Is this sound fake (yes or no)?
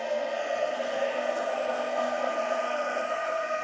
yes